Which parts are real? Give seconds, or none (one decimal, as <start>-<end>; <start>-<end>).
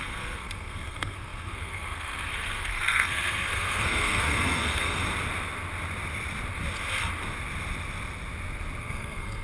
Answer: 5.0-8.8